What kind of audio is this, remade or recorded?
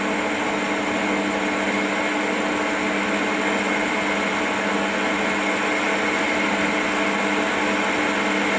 recorded